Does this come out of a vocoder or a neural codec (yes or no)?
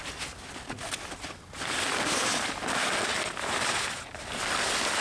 no